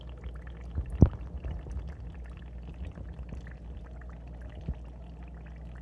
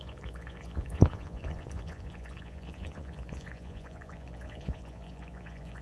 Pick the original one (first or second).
first